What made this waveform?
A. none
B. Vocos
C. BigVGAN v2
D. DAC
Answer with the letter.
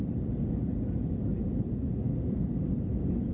A